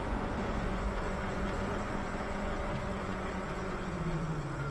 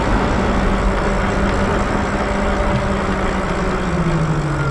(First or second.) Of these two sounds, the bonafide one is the second